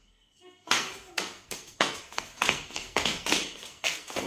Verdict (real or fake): fake